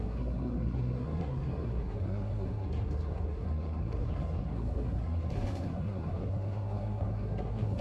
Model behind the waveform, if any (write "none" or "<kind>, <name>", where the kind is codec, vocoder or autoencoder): codec, SNAC